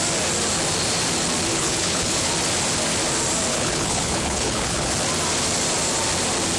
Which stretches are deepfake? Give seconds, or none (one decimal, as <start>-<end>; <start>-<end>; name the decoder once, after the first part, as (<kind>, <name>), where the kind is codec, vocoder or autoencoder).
1.5-2.3 (codec, HILCodec); 3.5-4.9